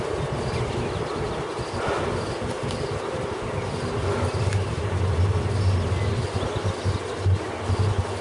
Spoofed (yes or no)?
no